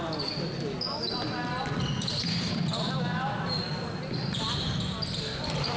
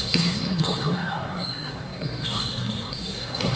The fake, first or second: second